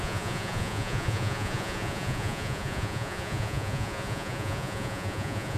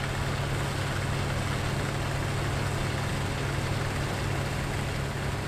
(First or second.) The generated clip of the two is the first